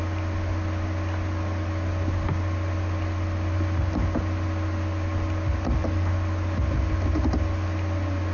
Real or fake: real